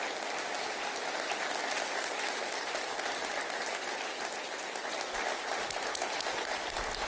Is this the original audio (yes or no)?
yes